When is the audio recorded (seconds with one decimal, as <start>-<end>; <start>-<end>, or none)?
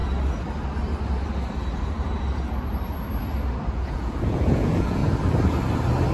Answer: 0.0-3.7; 5.0-6.1